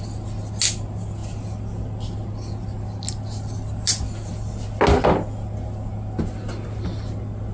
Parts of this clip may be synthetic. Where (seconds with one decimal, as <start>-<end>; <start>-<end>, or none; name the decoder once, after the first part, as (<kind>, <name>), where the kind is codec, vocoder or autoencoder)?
none